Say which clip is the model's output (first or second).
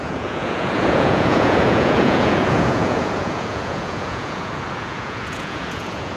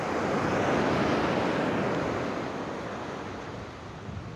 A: first